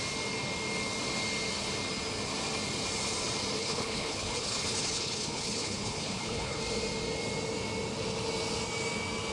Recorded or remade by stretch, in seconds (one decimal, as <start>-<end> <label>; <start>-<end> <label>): 0.0-3.6 recorded; 3.6-6.6 remade; 6.6-9.3 recorded